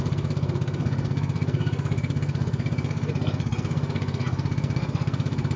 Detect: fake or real fake